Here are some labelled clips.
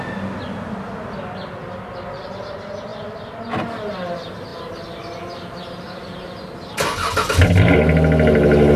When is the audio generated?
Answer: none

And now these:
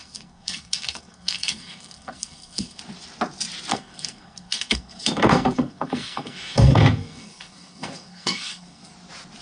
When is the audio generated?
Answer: 0.0-2.8 (codec, SNAC); 3.7-8.9

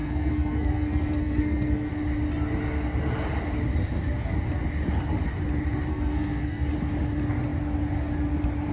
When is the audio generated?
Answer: 0.0-1.9 (codec, SNAC); 5.9-6.7

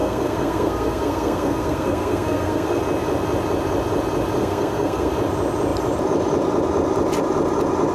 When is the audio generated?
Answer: 0.0-2.8 (codec, SNAC); 4.4-5.1

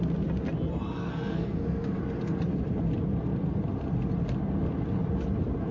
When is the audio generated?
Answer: 1.0-2.0 (codec, SNAC)